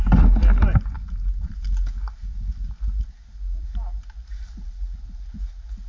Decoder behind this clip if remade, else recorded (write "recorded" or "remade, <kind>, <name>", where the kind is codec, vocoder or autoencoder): recorded